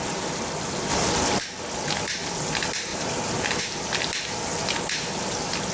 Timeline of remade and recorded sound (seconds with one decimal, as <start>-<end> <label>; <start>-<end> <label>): 0.0-5.7 recorded